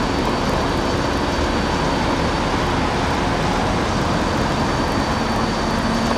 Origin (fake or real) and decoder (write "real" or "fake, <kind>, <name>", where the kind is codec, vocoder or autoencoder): real